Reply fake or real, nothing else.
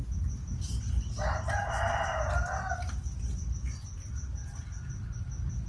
real